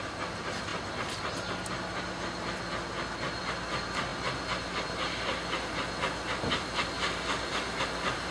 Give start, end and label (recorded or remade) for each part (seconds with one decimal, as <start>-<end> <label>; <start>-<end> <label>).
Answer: 0.0-8.3 recorded